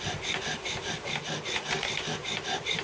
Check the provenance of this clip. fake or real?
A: real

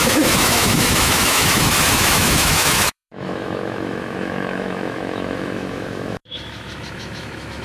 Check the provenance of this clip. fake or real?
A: fake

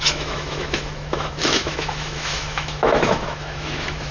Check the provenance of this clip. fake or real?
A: fake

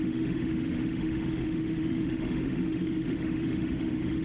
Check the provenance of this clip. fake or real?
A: fake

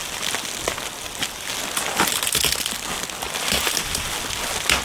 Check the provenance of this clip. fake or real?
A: real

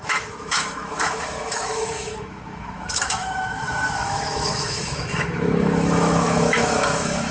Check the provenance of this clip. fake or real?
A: fake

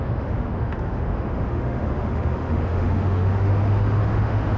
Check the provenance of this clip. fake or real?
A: fake